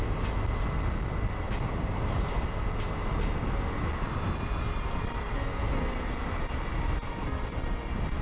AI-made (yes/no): no